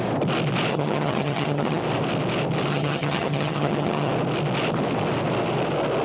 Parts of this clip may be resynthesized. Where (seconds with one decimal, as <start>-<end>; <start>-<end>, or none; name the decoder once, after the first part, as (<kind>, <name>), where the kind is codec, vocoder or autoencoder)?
0.7-1.8 (vocoder, HiFi-GAN); 2.7-4.1